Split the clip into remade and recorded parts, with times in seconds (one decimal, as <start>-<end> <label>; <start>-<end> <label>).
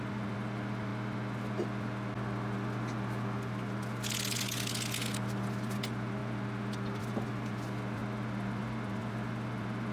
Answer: 0.0-9.9 recorded